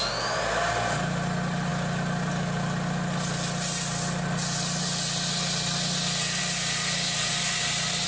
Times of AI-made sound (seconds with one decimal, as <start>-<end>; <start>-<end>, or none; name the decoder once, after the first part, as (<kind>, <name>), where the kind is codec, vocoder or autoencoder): none